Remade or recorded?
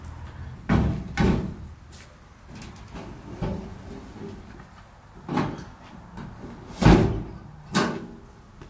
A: recorded